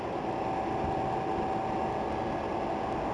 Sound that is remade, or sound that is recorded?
recorded